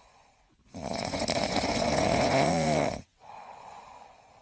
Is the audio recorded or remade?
remade